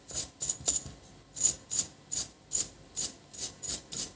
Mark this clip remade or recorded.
recorded